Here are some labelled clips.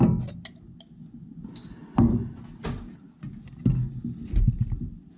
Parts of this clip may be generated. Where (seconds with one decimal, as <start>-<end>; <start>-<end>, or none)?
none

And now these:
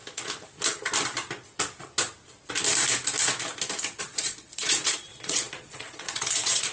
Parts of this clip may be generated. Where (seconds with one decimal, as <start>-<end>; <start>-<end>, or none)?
4.0-6.7

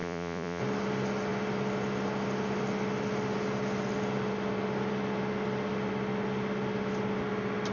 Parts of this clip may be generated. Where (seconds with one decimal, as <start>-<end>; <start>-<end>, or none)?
0.0-0.6

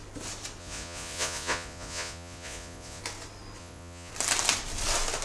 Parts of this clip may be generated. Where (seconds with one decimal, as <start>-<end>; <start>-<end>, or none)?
0.6-3.0; 3.6-4.1

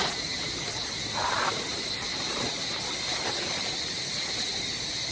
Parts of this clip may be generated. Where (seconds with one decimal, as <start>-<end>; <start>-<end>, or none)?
none

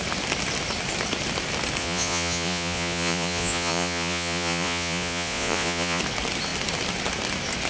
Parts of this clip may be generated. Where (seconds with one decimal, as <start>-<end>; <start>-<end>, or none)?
1.8-6.0